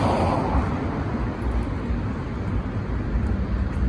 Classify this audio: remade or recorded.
recorded